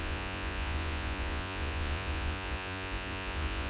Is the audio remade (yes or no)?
yes